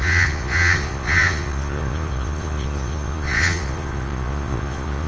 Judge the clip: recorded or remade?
remade